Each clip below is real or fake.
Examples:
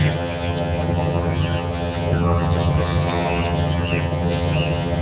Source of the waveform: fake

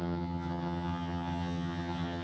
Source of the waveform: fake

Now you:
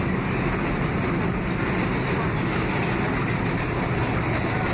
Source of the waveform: real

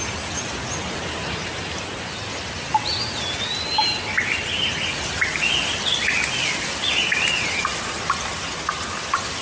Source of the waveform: real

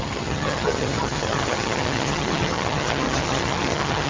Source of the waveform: fake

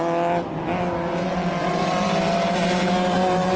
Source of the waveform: real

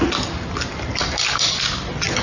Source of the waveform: real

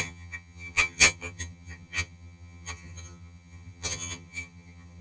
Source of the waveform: fake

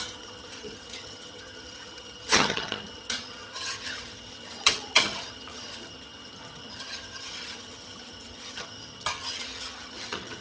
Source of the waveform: fake